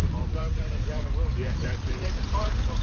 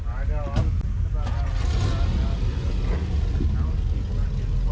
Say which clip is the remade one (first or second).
first